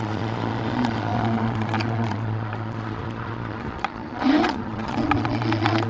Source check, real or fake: fake